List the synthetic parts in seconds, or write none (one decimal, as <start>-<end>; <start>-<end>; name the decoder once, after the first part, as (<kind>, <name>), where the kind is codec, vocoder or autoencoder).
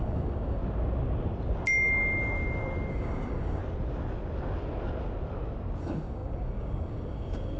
0.0-0.6 (codec, DAC); 2.9-3.6; 5.8-7.6